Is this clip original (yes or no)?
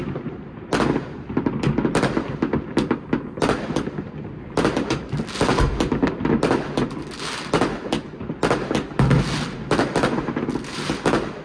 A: yes